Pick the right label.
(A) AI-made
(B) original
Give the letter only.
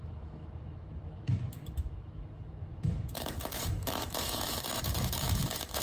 A